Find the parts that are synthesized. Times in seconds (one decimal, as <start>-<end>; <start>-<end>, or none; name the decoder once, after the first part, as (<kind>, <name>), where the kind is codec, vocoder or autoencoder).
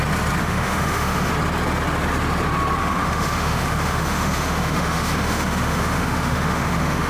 0.4-1.3 (autoencoder, DAC-VAE); 2.8-7.1